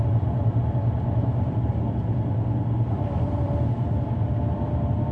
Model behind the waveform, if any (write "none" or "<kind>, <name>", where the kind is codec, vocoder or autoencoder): none